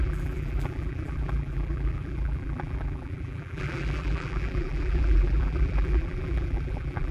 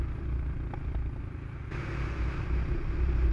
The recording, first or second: second